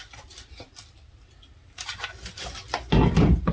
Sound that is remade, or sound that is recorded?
recorded